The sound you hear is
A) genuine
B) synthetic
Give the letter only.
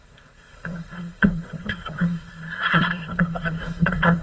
B